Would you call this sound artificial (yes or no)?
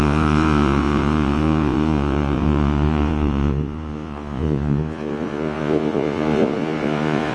yes